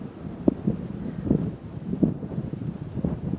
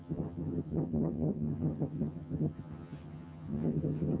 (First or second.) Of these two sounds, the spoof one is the second